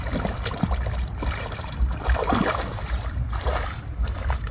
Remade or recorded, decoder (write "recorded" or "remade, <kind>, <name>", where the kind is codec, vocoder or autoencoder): remade, vocoder, BigVGAN v2